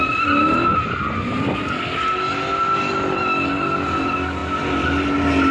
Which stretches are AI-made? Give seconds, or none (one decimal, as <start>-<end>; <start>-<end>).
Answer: none

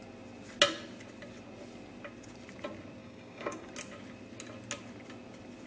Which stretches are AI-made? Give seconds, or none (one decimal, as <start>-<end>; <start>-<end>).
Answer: 3.0-3.7

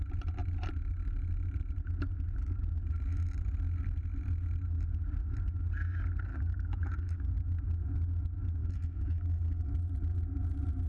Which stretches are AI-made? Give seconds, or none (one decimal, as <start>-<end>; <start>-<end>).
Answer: 6.3-7.3; 8.6-9.7

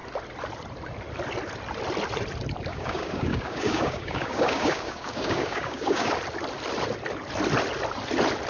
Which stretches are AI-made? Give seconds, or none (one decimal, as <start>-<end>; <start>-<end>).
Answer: 2.7-6.1